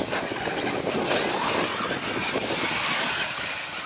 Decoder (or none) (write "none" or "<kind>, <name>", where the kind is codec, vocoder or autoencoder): none